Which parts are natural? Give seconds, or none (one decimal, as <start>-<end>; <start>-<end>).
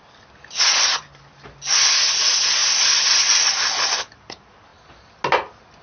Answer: 0.0-5.8